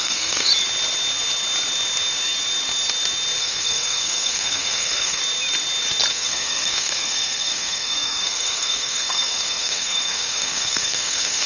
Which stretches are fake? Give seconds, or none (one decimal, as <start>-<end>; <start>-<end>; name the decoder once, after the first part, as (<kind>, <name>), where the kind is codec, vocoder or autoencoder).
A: 0.0-0.5 (codec, SNAC); 3.4-5.2; 6.1-11.5